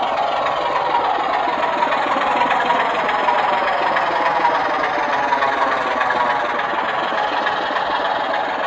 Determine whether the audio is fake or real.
real